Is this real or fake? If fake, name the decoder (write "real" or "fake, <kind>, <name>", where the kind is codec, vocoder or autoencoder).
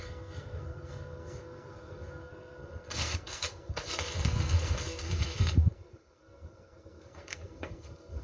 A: fake, codec, SNAC